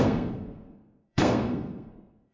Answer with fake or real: fake